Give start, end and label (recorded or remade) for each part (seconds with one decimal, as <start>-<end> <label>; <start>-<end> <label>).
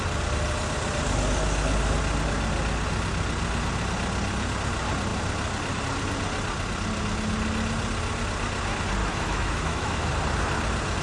0.0-9.0 recorded; 9.0-10.1 remade; 10.1-11.0 recorded